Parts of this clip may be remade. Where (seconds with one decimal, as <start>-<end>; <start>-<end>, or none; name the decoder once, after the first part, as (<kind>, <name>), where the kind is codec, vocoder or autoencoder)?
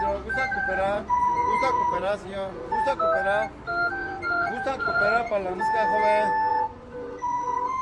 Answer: 0.5-2.9 (vocoder, Vocos); 4.0-5.6; 6.5-7.8